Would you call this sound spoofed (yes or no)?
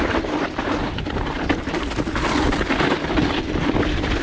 no